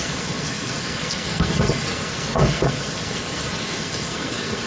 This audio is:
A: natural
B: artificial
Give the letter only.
B